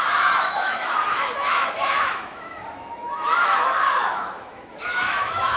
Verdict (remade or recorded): remade